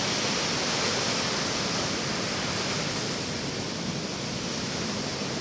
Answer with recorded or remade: remade